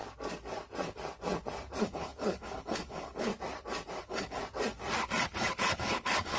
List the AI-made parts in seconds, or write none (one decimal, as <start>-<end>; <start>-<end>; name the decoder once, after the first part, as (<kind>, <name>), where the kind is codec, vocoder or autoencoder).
1.8-3.3 (codec, HILCodec); 4.0-4.4; 5.4-6.4